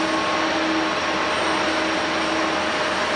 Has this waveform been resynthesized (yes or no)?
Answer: no